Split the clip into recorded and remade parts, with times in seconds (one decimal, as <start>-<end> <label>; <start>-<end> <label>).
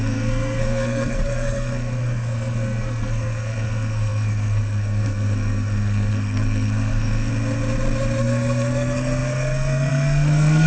0.0-7.3 remade; 7.3-8.2 recorded; 8.2-10.7 remade